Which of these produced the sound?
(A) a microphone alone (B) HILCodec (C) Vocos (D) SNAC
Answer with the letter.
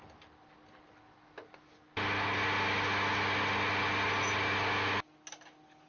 A